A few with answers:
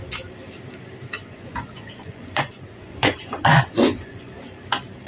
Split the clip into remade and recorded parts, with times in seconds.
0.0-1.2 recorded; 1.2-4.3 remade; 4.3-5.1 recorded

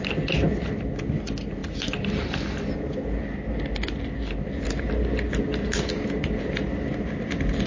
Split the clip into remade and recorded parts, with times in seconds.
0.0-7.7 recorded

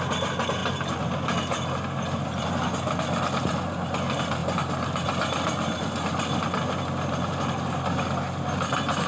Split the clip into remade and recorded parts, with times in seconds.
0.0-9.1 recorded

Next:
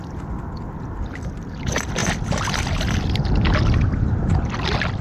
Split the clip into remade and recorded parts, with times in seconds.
0.0-5.0 recorded